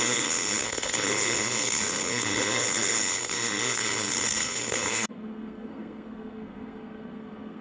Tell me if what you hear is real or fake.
fake